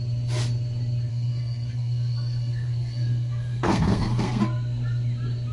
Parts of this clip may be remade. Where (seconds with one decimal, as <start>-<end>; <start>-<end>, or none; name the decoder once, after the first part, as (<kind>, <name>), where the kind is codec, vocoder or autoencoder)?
1.1-4.4 (codec, SNAC)